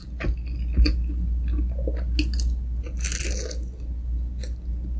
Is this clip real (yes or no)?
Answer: yes